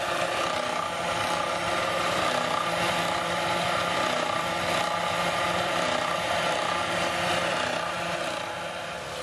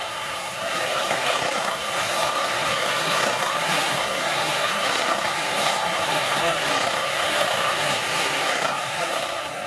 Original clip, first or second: first